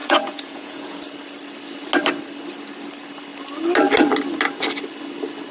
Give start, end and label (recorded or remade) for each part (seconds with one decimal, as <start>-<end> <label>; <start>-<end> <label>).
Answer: 0.0-1.0 remade; 1.0-5.5 recorded